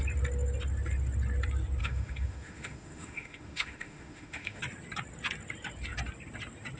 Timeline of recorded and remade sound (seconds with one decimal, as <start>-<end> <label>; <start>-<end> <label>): 0.0-1.8 recorded; 1.8-4.6 remade; 4.6-6.8 recorded